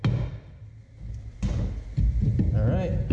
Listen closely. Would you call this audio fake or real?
real